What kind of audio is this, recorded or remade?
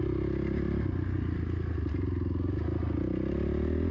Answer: recorded